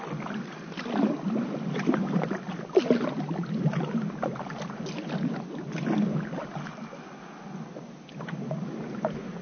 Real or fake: real